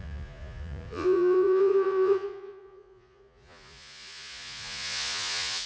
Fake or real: fake